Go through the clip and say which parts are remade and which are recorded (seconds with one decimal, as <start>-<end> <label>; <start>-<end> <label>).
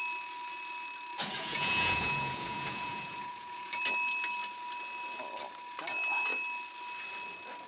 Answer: 0.0-1.1 recorded; 1.1-3.8 remade; 3.8-7.7 recorded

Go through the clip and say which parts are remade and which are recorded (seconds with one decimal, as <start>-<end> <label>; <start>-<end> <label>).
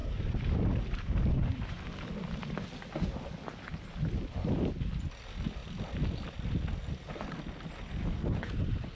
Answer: 0.0-2.7 remade; 2.7-5.6 recorded; 5.6-7.3 remade; 7.3-8.9 recorded